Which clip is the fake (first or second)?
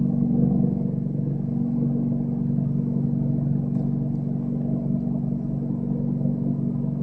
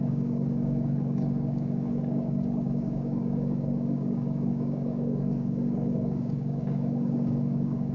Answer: second